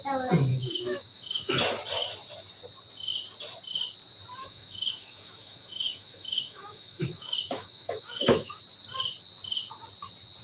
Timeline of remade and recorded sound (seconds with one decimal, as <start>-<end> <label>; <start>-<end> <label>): 0.0-0.5 recorded; 0.5-1.5 remade; 1.5-4.4 recorded; 4.4-8.6 remade; 8.6-10.4 recorded